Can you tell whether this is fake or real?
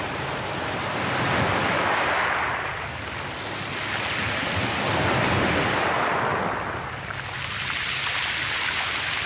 real